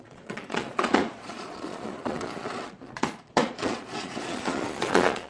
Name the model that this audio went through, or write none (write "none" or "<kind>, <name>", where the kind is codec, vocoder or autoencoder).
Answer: vocoder, Vocos